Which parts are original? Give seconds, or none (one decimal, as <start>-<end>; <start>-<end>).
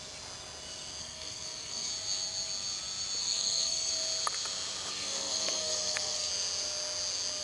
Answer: 0.0-1.0; 1.9-3.2; 3.9-4.9; 6.3-7.4